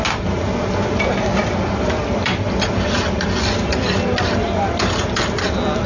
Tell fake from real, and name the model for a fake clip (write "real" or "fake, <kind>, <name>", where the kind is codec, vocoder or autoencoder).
real